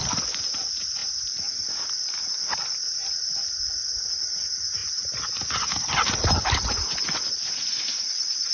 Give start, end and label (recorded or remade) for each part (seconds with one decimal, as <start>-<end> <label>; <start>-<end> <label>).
0.0-8.5 recorded